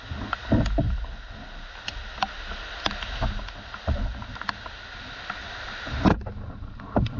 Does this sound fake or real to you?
real